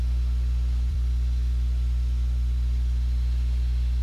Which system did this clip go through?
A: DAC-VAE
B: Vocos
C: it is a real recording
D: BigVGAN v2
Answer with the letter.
D